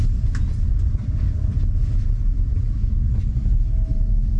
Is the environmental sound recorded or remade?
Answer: recorded